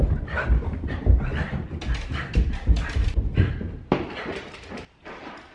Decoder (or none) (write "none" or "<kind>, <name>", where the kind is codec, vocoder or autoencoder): none